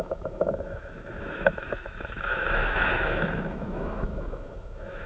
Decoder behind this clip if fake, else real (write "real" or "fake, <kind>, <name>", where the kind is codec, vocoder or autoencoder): fake, autoencoder, DAC-VAE